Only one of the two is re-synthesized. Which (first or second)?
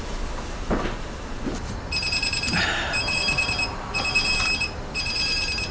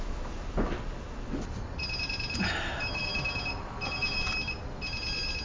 first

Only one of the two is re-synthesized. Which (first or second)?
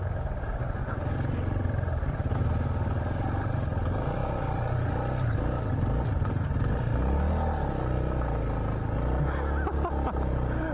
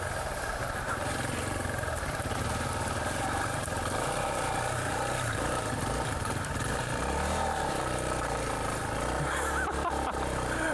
second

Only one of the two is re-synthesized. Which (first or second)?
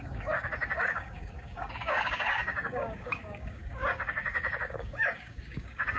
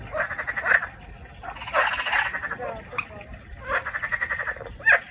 first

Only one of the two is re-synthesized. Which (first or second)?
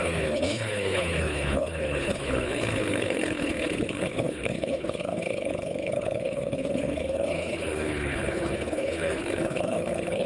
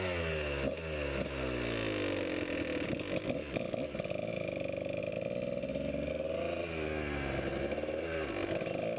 first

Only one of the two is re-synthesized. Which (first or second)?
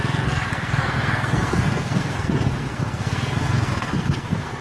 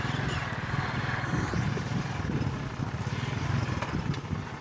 first